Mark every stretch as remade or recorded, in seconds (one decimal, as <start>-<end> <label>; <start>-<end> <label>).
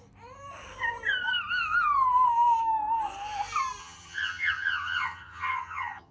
0.0-3.8 recorded; 3.8-6.1 remade